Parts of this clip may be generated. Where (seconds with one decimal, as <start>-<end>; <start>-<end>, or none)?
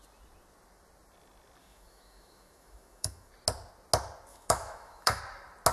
1.6-3.3; 4.3-5.2